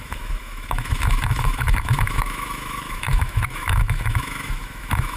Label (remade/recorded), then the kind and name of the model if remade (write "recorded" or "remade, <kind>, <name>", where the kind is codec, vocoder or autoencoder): remade, autoencoder, DAC-VAE